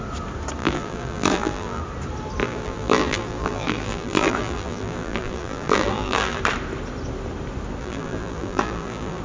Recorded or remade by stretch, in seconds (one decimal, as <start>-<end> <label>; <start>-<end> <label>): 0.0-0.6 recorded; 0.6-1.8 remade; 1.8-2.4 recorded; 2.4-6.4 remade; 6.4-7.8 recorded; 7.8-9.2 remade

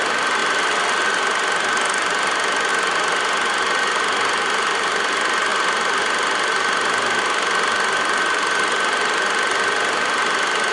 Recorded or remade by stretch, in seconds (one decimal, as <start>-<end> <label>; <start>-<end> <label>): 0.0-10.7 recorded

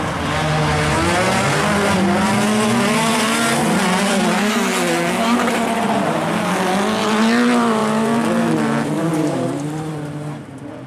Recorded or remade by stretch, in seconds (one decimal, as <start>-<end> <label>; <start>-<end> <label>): 0.0-9.1 recorded; 9.1-10.4 remade; 10.4-10.9 recorded

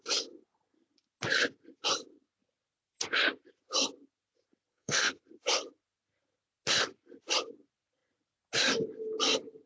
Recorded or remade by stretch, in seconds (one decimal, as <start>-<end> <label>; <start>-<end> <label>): 0.0-4.7 recorded; 4.7-5.2 remade; 5.2-9.7 recorded

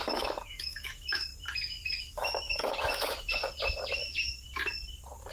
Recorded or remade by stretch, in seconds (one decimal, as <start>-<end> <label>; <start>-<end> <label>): 0.0-1.3 remade; 1.3-2.0 recorded; 2.0-3.4 remade; 3.4-5.3 recorded

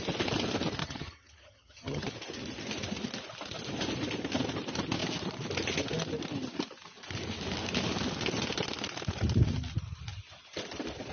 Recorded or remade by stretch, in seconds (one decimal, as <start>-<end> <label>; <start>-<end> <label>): 0.0-0.8 recorded; 0.8-2.1 remade; 2.1-11.1 recorded

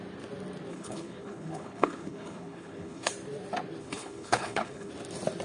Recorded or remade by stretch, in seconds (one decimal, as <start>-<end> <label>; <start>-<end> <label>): 0.0-0.7 recorded; 0.7-3.1 remade; 3.1-3.8 recorded; 3.8-4.9 remade; 4.9-5.4 recorded